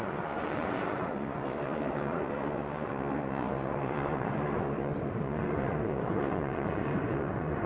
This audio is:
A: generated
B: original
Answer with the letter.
A